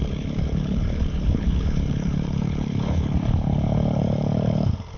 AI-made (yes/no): yes